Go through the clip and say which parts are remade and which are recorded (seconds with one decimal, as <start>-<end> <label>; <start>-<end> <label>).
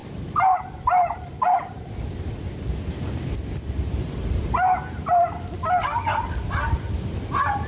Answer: 0.0-7.7 recorded